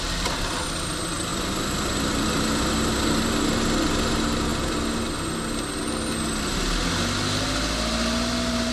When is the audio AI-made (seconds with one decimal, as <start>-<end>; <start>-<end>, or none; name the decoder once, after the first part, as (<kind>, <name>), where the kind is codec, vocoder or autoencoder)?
none